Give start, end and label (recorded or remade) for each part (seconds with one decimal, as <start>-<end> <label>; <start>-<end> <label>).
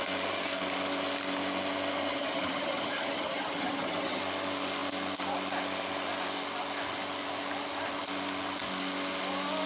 0.0-2.1 recorded; 2.1-4.2 remade; 4.2-9.7 recorded